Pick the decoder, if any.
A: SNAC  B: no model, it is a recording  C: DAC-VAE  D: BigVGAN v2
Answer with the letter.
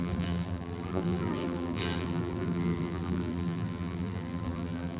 D